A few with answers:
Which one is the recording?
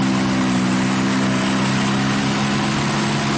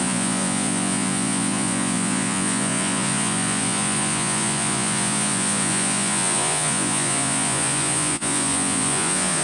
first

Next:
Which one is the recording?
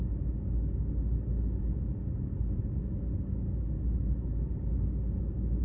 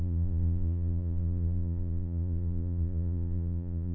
first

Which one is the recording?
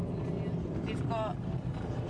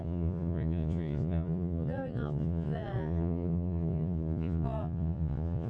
first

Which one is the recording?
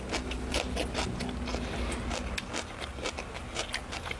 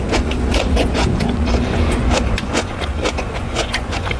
first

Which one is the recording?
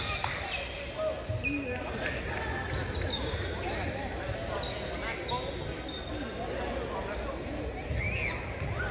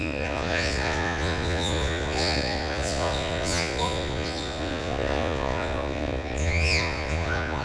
first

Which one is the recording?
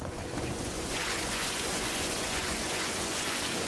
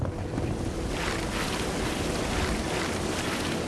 second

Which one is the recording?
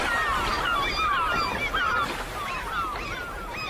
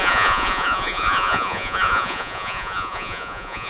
first